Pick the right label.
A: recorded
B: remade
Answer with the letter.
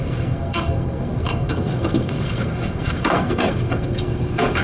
B